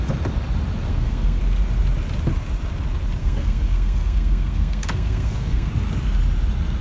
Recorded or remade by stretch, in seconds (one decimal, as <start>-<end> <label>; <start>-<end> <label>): 0.0-0.9 recorded; 0.9-1.4 remade; 1.4-3.2 recorded; 3.2-5.7 remade; 5.7-6.8 recorded